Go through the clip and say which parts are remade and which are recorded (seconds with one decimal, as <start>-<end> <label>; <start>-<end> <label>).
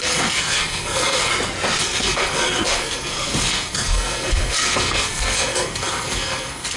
0.0-1.3 remade; 1.3-1.8 recorded; 1.8-6.8 remade